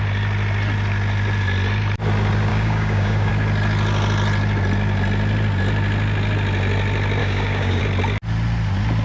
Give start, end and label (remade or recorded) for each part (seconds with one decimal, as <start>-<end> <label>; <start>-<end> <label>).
0.0-2.5 recorded; 2.5-3.3 remade; 3.3-7.2 recorded; 7.2-7.8 remade; 7.8-9.0 recorded